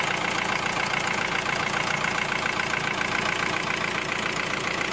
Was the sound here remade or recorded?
recorded